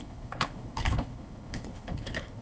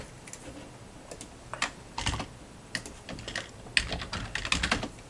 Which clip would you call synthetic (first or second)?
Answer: first